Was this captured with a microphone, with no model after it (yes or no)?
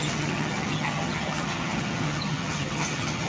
no